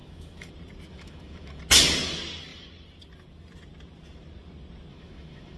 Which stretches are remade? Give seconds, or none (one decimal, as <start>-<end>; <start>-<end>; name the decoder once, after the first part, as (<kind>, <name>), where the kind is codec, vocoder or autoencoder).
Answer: 0.0-0.5 (autoencoder, DAC-VAE); 0.9-1.6; 4.9-5.6